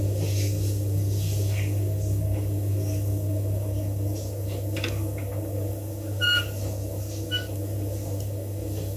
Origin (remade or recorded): remade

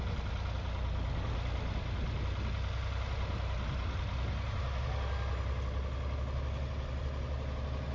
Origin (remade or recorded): recorded